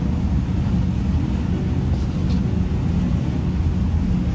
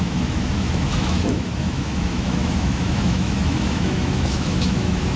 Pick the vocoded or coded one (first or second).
second